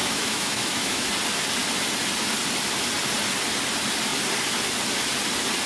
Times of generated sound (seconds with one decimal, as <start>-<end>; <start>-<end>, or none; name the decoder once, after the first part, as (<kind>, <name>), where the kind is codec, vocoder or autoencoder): 0.0-1.1 (autoencoder, DAC-VAE)